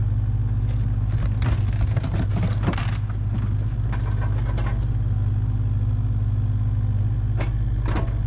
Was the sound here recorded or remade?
recorded